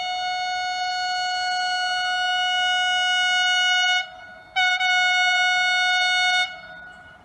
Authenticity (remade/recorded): recorded